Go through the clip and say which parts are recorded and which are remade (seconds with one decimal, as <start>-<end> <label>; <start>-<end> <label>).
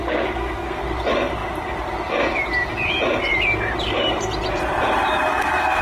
0.0-0.8 remade; 0.8-5.3 recorded; 5.3-5.8 remade